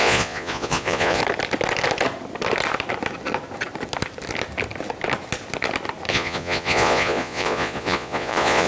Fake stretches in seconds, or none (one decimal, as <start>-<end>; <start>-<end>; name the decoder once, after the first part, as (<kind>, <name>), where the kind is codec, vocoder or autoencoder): 0.0-1.2 (vocoder, Vocos); 6.1-8.7